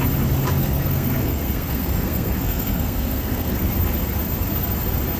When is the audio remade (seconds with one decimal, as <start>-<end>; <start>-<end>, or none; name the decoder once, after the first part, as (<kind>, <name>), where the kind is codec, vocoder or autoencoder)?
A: 0.6-3.7 (codec, SNAC)